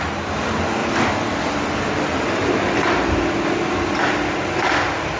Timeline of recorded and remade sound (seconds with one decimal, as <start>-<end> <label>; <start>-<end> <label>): 0.0-0.8 recorded; 0.8-1.4 remade; 1.4-5.2 recorded